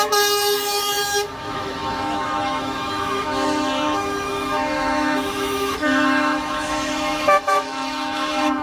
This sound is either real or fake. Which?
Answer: fake